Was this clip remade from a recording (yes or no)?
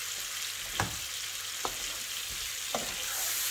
no